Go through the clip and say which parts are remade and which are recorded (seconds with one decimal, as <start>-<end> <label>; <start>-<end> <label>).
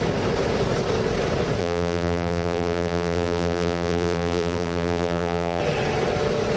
0.0-1.6 recorded; 1.6-5.6 remade; 5.6-6.6 recorded